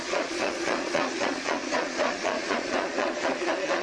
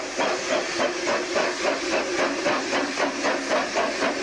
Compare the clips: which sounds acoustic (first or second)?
second